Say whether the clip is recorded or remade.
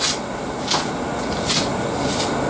recorded